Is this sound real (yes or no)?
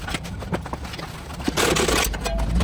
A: yes